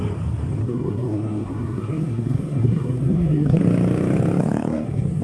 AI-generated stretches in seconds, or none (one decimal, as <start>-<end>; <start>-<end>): 0.6-3.6; 4.4-5.2